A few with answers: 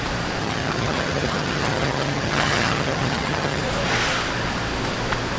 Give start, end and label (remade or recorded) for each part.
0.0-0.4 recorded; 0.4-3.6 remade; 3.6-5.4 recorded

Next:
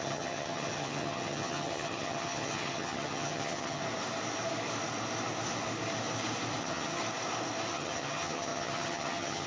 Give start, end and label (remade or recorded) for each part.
0.0-3.8 remade; 3.8-6.6 recorded; 6.6-7.0 remade; 7.0-7.7 recorded; 7.7-9.5 remade

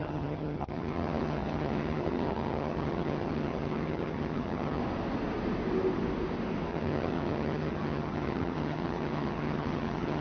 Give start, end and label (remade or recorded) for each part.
0.0-4.8 remade; 4.8-6.7 recorded; 6.7-10.2 remade

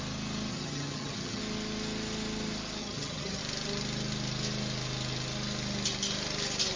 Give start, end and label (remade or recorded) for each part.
0.0-0.5 recorded; 0.5-1.4 remade; 1.4-2.8 recorded; 2.8-3.4 remade; 3.4-6.8 recorded